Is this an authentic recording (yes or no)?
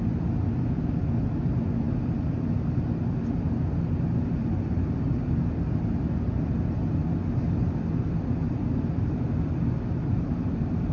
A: yes